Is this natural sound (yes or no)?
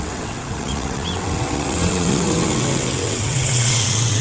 no